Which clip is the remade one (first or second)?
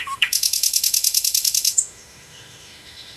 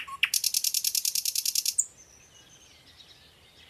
first